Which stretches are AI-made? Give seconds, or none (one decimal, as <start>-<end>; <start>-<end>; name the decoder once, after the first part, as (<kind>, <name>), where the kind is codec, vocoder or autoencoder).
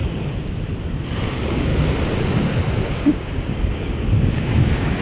1.1-1.7 (codec, DAC); 2.8-5.0